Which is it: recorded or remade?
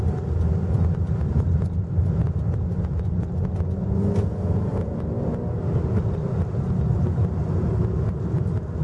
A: recorded